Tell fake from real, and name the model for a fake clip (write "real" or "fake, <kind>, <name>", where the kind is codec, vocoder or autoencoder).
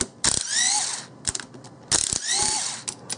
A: real